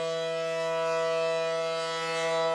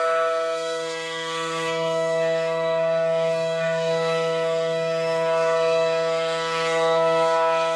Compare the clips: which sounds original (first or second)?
first